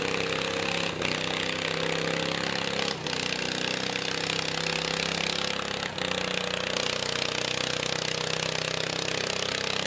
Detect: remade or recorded recorded